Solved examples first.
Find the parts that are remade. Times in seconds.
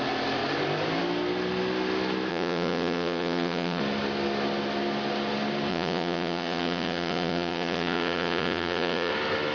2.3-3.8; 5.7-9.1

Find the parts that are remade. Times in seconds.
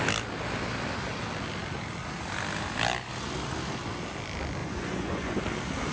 4.6-5.4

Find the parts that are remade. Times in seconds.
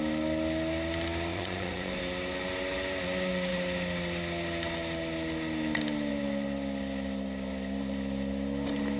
1.3-2.0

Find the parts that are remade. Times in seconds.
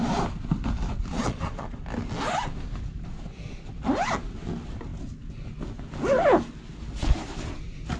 1.1-1.8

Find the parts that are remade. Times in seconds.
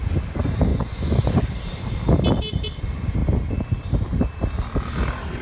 0.7-1.4